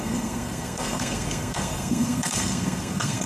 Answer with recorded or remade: remade